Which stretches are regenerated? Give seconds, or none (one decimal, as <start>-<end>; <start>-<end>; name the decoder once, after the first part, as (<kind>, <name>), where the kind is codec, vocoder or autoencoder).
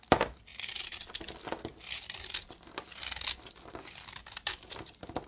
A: none